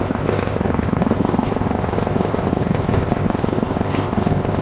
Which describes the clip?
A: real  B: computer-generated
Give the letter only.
B